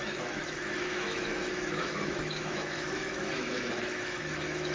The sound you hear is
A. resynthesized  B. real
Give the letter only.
A